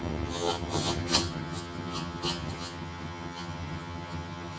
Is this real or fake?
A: fake